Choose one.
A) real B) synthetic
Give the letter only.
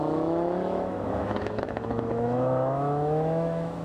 B